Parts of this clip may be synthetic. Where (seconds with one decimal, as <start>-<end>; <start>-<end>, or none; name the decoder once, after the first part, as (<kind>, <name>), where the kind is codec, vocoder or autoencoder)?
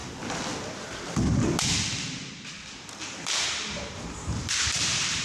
3.0-5.2 (vocoder, BigVGAN v2)